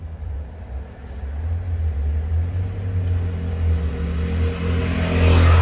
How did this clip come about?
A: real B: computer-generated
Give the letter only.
A